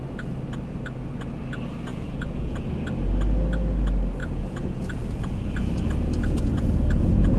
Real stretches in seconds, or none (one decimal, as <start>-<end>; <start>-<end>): 0.0-1.9; 2.7-4.2

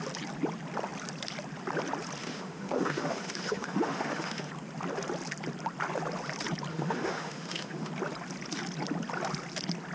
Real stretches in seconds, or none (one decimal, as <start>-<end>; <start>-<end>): 0.0-2.2; 4.5-6.7; 7.9-9.9